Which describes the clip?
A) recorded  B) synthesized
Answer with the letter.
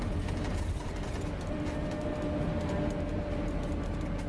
A